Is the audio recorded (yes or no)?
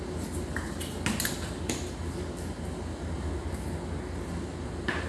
yes